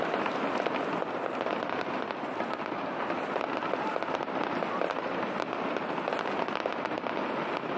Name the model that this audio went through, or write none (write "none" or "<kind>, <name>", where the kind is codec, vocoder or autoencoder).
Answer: none